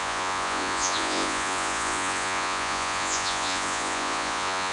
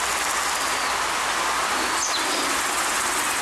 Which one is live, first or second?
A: second